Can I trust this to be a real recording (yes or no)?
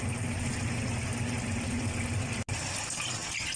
yes